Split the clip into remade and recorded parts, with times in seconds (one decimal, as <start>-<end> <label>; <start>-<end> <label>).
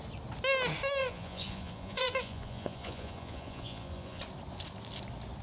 0.0-1.0 recorded; 1.0-4.2 remade; 4.2-5.4 recorded